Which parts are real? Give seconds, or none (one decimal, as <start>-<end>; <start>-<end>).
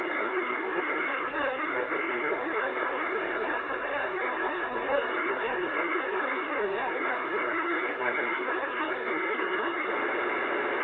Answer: 9.9-10.8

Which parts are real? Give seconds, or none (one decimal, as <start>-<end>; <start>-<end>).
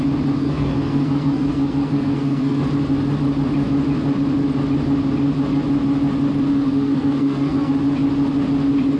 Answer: 0.0-0.4; 2.6-6.5; 7.7-9.0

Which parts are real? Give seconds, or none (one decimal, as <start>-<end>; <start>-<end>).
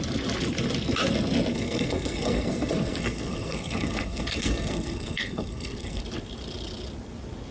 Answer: 0.0-1.5; 6.0-7.5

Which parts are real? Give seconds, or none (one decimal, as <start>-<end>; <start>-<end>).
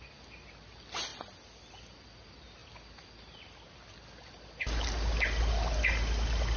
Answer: 0.0-6.6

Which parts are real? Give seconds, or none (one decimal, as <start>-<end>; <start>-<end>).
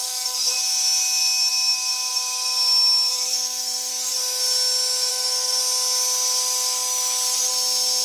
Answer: 0.5-3.1; 3.9-5.1; 5.6-8.0